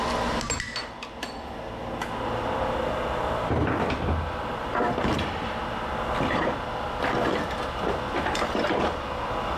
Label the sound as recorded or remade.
recorded